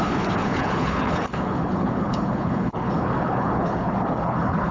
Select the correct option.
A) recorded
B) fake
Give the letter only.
B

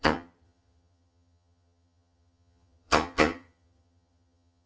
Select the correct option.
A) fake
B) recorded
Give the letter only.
A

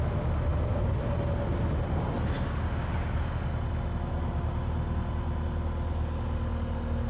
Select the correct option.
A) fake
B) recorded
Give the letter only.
B